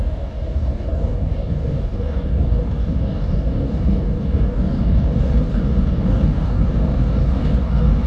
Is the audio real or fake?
fake